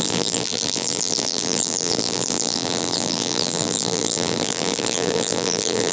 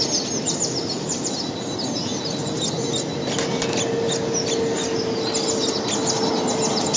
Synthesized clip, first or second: first